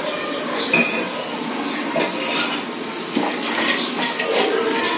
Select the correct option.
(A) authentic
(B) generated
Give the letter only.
A